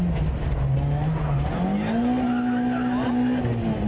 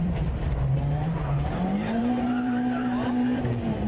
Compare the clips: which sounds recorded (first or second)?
first